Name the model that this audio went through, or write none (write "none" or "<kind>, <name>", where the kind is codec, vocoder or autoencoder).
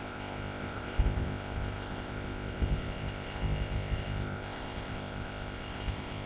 codec, ZipCodec